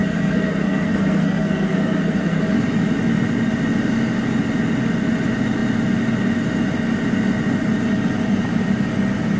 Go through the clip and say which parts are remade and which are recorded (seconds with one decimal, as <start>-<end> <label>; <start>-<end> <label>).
0.0-2.4 remade; 2.4-9.4 recorded